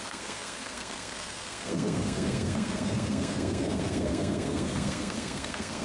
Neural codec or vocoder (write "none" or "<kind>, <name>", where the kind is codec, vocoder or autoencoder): codec, SNAC